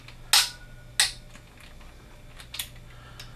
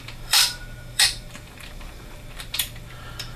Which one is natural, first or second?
first